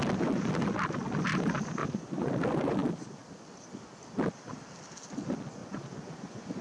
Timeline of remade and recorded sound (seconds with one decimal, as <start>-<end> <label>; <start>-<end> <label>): 0.0-1.8 recorded; 1.8-2.3 remade; 2.3-5.6 recorded; 5.6-6.6 remade